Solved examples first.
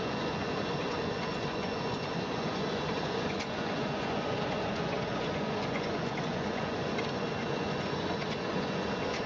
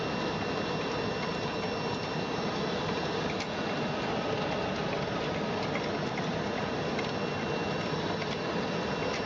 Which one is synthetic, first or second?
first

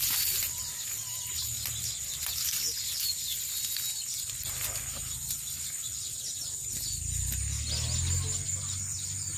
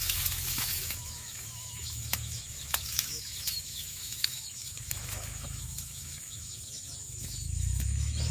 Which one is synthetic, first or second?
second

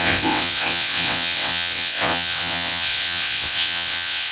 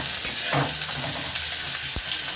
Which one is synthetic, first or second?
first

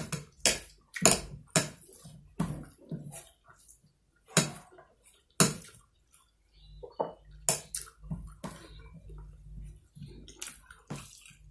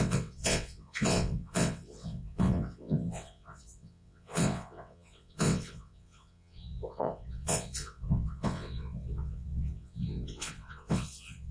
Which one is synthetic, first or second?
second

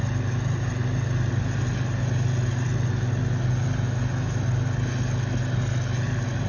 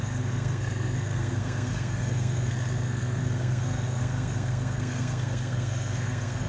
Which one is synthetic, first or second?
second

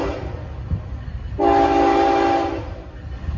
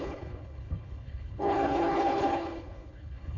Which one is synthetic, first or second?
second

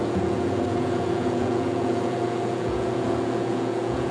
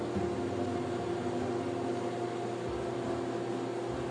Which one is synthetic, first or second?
first